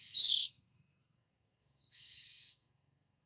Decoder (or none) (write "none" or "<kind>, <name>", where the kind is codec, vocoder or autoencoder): codec, SNAC